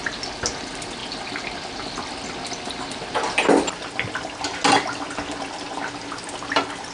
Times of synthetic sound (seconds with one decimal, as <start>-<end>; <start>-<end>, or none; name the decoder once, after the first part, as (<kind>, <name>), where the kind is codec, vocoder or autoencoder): none